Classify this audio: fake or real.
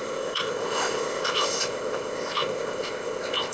fake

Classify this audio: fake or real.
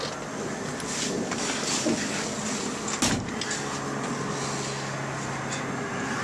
real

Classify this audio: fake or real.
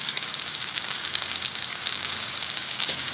fake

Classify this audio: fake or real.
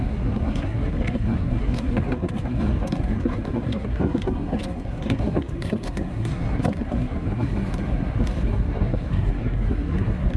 fake